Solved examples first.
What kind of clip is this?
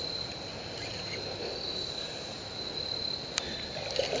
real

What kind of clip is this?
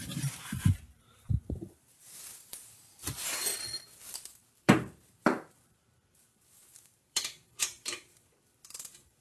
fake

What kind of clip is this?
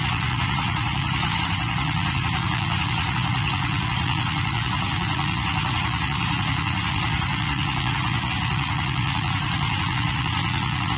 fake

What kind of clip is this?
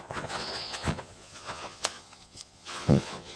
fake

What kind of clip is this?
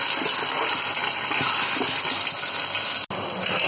real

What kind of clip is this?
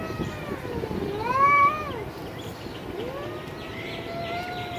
fake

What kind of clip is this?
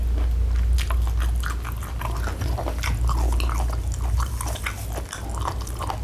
real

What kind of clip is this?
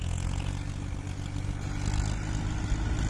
real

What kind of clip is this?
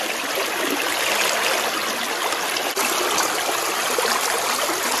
real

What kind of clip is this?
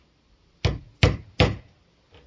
real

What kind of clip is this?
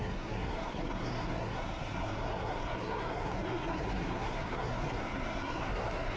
fake